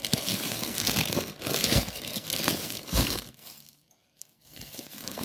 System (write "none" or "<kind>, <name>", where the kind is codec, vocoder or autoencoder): codec, SNAC